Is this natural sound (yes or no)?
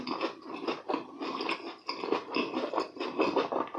yes